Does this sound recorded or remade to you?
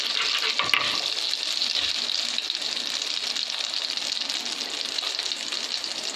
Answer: recorded